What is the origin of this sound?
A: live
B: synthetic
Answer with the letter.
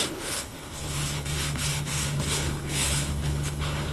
B